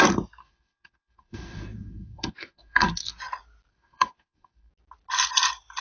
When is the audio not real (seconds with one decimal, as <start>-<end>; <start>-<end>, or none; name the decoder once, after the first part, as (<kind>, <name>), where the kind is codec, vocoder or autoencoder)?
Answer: 0.4-3.2 (codec, SNAC); 3.7-4.7